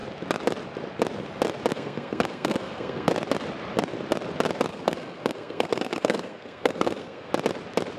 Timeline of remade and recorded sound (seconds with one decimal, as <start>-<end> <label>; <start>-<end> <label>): 0.0-1.7 recorded; 1.7-3.1 remade; 3.1-4.7 recorded; 4.7-7.3 remade; 7.3-8.0 recorded